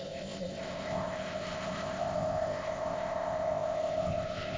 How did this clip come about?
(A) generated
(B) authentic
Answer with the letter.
A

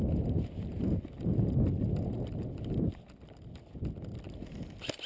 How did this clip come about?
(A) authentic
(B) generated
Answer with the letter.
A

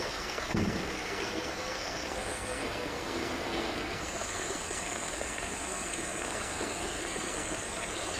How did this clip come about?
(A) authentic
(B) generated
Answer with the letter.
B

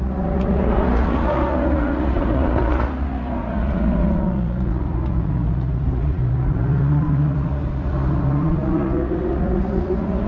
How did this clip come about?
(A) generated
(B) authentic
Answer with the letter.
A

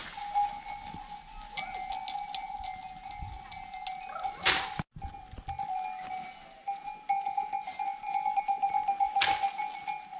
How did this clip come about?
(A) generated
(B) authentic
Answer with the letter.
B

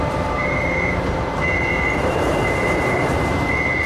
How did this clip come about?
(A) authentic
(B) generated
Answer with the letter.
B